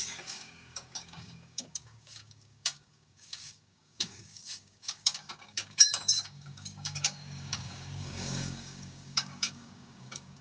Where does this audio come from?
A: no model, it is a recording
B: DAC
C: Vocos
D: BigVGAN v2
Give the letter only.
B